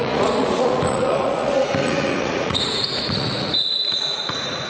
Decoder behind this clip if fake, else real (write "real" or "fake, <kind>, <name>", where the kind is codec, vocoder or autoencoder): fake, vocoder, Vocos